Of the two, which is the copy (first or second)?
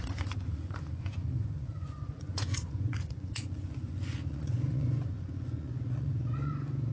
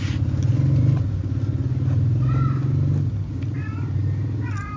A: first